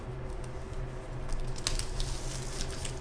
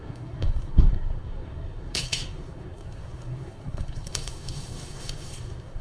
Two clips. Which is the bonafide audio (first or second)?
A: first